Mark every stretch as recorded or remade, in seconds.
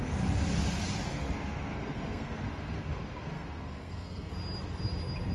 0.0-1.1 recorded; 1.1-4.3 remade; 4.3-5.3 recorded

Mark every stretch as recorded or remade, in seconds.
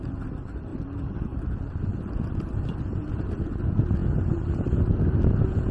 0.0-5.7 recorded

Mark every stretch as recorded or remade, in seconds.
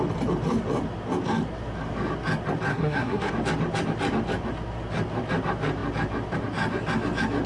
0.0-2.7 recorded; 2.7-3.3 remade; 3.3-7.5 recorded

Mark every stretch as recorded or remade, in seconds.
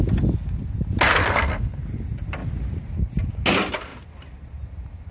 0.0-1.1 recorded; 1.1-1.8 remade; 1.8-5.1 recorded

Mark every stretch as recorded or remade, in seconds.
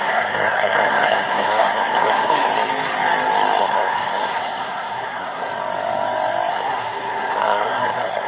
0.0-2.5 remade; 2.5-3.6 recorded; 3.6-5.5 remade; 5.5-6.5 recorded; 6.5-8.3 remade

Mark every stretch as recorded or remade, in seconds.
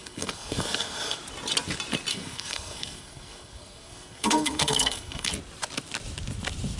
0.0-1.2 remade; 1.2-2.1 recorded; 2.1-5.3 remade; 5.3-6.8 recorded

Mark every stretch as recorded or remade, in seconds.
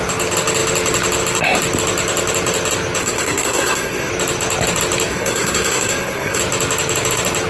0.0-3.0 recorded; 3.0-4.1 remade; 4.1-5.1 recorded; 5.1-6.4 remade; 6.4-7.5 recorded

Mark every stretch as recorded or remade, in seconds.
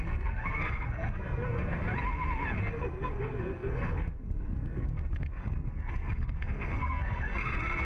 0.0-1.8 remade; 1.8-2.6 recorded; 2.6-7.8 remade